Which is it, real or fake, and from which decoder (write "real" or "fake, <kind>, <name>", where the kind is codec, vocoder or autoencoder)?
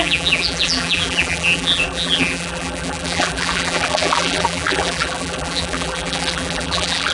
fake, vocoder, BigVGAN v2